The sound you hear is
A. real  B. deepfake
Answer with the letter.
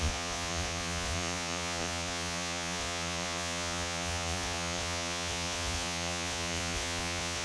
B